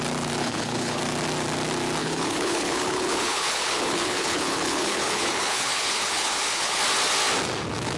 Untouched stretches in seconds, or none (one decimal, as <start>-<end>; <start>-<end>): 0.0-0.4; 1.0-2.0; 6.8-8.0